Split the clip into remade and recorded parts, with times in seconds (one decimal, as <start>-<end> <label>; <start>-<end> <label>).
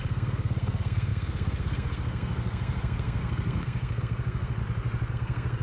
0.0-4.6 remade; 4.6-5.1 recorded; 5.1-5.6 remade